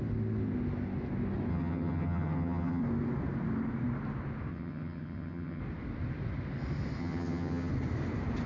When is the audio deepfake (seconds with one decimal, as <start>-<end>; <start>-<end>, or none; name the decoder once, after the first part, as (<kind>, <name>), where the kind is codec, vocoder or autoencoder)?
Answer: 1.5-2.8 (vocoder, HiFi-GAN); 4.5-5.6; 7.0-7.7